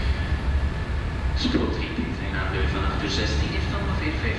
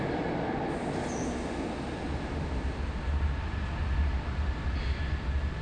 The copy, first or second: first